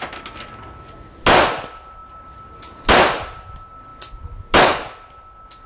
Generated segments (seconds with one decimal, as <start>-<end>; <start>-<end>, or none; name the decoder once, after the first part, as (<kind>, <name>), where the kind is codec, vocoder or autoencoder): none